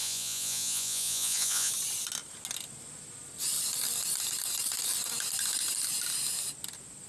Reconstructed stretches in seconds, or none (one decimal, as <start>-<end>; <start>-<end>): 0.0-1.7